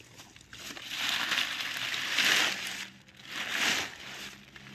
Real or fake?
real